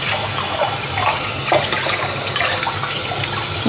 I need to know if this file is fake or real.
real